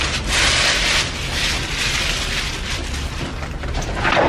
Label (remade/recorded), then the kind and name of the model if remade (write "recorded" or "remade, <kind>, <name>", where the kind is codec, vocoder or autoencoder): recorded